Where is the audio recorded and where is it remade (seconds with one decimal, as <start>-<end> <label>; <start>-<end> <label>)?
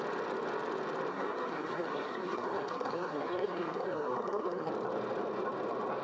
0.0-1.1 recorded; 1.1-4.7 remade; 4.7-6.0 recorded